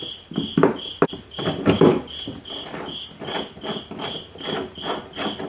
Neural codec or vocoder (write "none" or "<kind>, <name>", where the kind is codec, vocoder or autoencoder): none